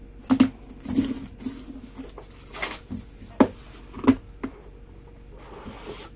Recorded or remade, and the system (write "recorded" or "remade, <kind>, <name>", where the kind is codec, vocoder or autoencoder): recorded